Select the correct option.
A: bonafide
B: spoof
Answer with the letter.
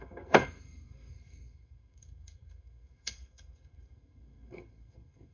B